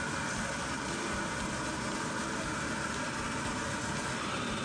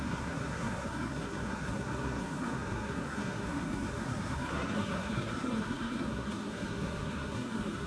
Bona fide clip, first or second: first